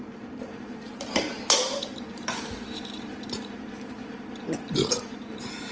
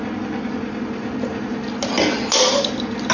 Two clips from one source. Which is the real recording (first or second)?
second